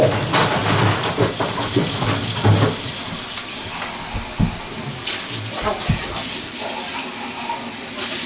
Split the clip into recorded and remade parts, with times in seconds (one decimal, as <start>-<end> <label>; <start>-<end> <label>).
0.0-8.3 recorded